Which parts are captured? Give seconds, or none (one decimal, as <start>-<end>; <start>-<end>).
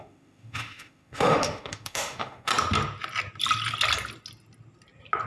2.5-5.3